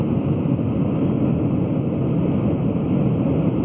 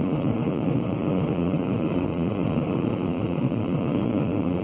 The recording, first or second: first